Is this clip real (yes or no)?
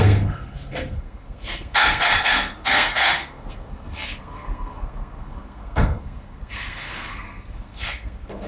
no